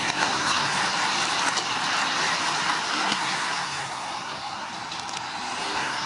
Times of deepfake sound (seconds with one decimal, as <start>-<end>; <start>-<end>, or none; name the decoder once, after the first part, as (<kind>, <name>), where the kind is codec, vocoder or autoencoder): 0.0-0.8 (codec, SNAC); 2.9-4.7; 5.6-6.1